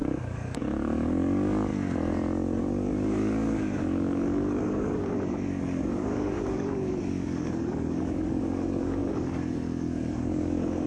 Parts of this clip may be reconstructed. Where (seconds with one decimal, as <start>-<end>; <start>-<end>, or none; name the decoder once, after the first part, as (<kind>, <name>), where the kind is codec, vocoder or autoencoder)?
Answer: 0.0-1.7 (codec, DAC); 2.6-10.9